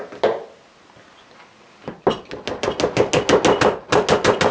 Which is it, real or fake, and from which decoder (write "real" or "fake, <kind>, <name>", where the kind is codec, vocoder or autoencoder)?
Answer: real